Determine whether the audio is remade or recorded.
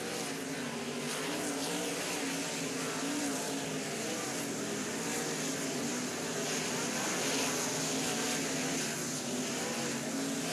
recorded